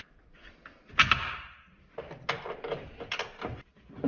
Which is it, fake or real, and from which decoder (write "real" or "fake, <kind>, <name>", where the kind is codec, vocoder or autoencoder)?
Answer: real